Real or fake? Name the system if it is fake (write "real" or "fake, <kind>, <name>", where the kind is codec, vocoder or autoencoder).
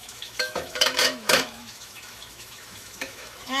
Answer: fake, autoencoder, DAC-VAE